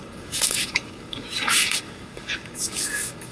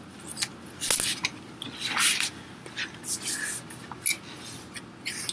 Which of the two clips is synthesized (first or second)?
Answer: first